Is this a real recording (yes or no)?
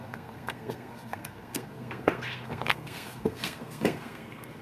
no